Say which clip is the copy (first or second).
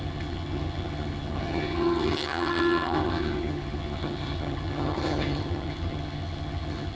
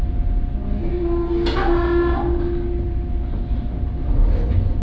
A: first